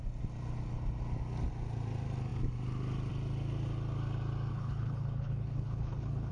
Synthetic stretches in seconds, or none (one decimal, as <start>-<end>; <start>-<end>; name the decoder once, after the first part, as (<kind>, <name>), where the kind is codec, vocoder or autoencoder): 4.5-6.3 (codec, HILCodec)